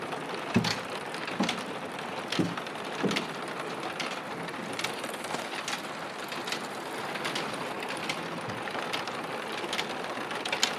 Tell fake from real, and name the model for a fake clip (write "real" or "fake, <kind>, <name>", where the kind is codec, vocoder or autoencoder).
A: real